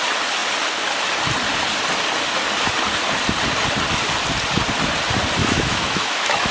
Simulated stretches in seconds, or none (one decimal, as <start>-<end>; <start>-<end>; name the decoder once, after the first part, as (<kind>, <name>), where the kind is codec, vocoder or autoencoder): 5.4-6.5 (autoencoder, DAC-VAE)